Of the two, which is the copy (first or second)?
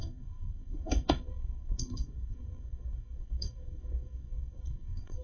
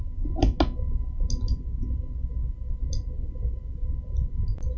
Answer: first